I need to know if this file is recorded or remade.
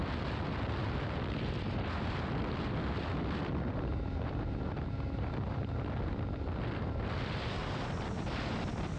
remade